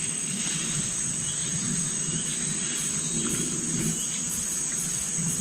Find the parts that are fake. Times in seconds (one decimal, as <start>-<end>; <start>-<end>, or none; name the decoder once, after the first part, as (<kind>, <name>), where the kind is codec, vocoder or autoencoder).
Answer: 1.4-4.6 (vocoder, BigVGAN v2)